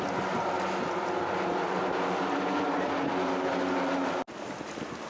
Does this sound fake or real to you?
real